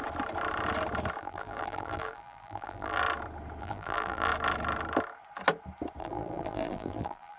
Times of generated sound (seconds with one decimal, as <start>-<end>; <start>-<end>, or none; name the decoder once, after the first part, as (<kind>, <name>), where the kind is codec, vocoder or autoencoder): 1.2-3.0 (vocoder, BigVGAN v2); 3.6-4.3; 6.0-7.4